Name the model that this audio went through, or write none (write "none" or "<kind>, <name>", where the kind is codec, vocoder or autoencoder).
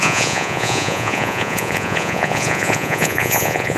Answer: vocoder, Vocos